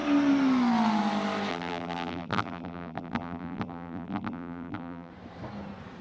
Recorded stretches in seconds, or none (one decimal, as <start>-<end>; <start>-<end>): 0.0-1.5; 5.1-6.0